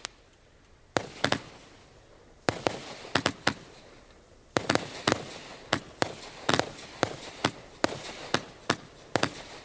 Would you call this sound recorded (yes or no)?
yes